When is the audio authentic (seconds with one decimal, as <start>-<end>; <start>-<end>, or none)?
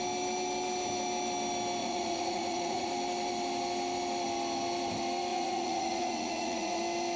0.0-1.8; 2.9-5.3; 6.8-7.2